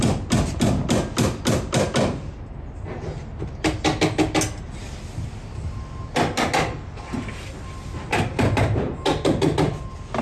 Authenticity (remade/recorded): recorded